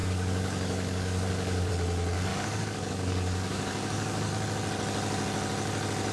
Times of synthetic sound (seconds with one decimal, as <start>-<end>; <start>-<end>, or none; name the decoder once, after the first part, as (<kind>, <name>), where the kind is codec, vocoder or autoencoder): 0.0-1.7 (codec, DAC); 2.3-4.3